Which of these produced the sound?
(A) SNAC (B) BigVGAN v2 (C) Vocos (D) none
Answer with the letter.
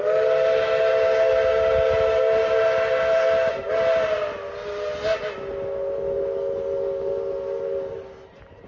D